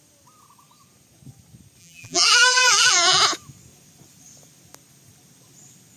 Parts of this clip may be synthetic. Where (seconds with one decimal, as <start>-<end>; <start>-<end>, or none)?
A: 1.8-3.2